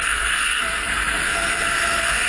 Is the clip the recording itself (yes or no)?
no